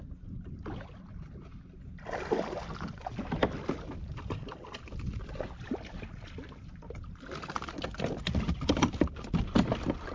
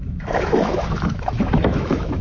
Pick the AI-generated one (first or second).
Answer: second